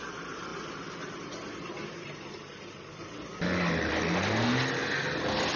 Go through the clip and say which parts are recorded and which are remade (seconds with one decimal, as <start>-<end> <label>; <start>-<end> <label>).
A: 0.0-5.6 recorded